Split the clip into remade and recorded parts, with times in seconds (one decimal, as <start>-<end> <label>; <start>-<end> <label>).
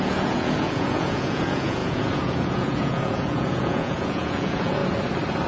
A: 0.0-4.8 remade; 4.8-5.5 recorded